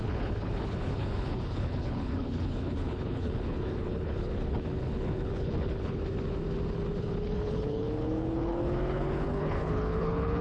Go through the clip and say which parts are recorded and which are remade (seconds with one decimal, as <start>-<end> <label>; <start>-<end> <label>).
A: 0.0-6.0 remade; 6.0-7.0 recorded; 7.0-10.4 remade